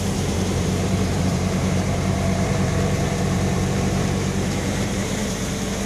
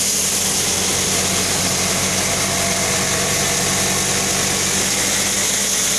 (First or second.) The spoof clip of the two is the first